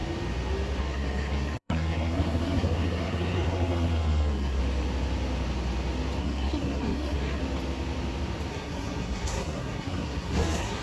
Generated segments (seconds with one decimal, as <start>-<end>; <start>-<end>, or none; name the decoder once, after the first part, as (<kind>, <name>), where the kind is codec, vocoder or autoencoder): 0.8-4.6 (codec, SNAC); 6.2-7.4; 8.5-10.8